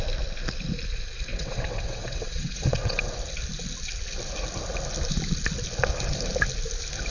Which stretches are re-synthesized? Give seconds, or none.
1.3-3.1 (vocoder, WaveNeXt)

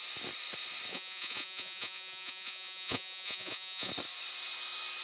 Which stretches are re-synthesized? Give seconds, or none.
0.9-3.9 (vocoder, Vocos)